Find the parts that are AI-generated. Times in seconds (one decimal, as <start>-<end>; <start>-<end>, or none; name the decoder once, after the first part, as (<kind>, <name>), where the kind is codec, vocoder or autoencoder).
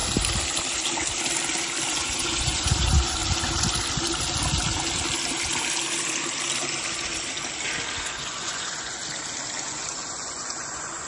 1.9-3.2 (vocoder, Vocos); 8.1-9.0; 9.6-11.1